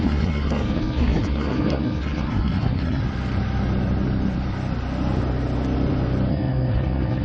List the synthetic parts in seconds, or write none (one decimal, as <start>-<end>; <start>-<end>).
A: 0.0-3.0; 6.3-7.2